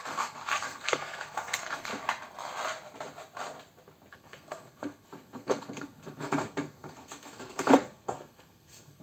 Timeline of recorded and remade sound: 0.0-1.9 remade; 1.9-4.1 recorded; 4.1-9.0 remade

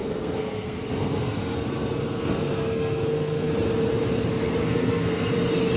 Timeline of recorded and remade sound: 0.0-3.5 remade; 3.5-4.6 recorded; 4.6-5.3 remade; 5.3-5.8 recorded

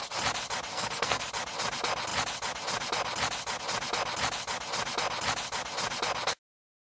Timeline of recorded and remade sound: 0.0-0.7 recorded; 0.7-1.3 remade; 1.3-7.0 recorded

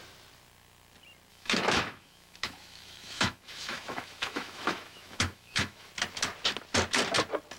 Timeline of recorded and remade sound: 0.0-1.3 recorded; 1.3-5.9 remade; 5.9-7.6 recorded

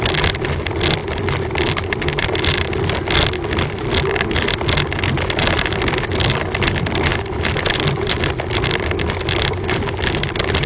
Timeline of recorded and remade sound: 0.0-1.0 recorded; 1.0-2.9 remade; 2.9-7.1 recorded; 7.1-10.7 remade

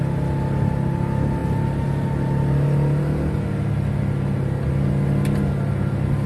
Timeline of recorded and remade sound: 0.0-6.3 recorded